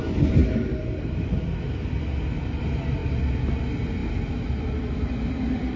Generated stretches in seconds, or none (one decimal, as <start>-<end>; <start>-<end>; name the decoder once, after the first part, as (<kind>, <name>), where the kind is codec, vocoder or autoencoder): none